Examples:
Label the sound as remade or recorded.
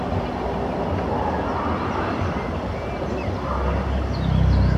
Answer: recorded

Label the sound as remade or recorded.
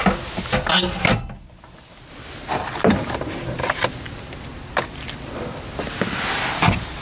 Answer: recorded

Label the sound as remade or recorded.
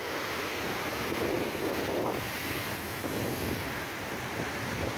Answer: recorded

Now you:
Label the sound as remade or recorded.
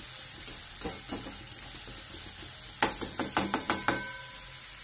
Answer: recorded